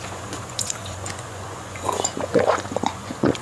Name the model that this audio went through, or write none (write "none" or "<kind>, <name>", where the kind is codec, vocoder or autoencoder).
vocoder, Vocos